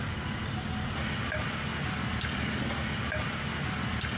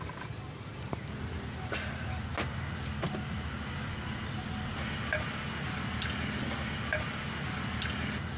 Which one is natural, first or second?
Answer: second